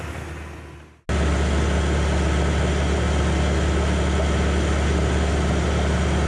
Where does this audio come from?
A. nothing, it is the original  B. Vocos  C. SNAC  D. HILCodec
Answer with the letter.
A